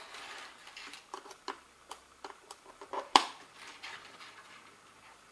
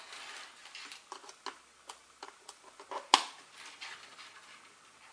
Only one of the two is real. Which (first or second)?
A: second